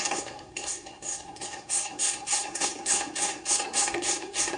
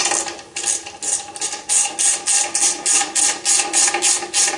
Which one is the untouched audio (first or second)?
second